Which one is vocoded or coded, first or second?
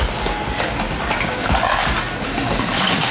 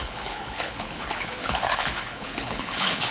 second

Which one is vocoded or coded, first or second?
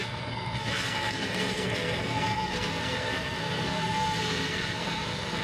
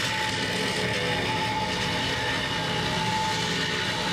first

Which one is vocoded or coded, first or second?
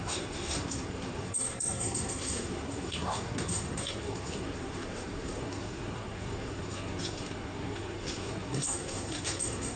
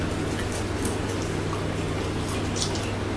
first